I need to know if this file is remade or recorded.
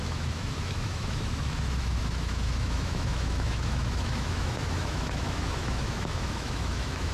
remade